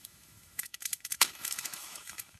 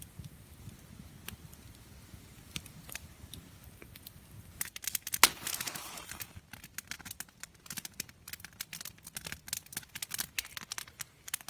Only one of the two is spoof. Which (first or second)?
first